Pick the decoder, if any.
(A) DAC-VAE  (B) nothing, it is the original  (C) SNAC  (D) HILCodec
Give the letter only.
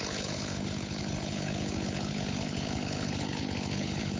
D